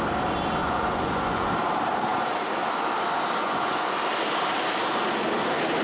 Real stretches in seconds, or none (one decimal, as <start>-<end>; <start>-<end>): 0.0-0.6; 1.5-3.4; 4.0-5.8